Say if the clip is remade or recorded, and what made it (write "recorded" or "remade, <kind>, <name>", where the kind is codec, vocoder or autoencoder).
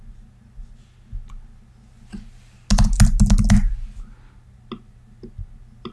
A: recorded